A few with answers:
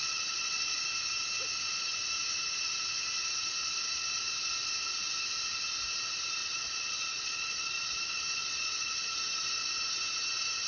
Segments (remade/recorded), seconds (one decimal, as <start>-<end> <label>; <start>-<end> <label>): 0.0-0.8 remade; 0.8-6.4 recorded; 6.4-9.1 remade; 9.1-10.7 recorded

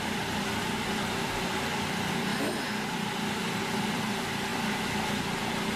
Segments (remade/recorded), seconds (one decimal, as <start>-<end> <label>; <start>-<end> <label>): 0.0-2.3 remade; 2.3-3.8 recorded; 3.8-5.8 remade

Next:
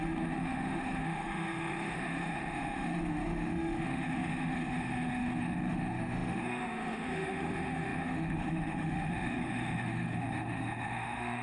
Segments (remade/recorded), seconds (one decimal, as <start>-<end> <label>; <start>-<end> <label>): 0.0-11.4 remade

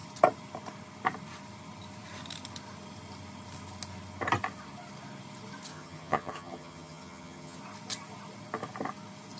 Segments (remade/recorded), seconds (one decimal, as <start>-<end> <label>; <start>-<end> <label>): 0.0-5.7 recorded; 5.7-7.6 remade; 7.6-9.4 recorded

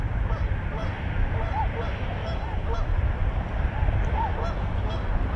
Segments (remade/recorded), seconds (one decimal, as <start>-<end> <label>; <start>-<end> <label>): 0.0-0.8 recorded; 0.8-1.6 remade; 1.6-2.2 recorded; 2.2-4.3 remade; 4.3-5.4 recorded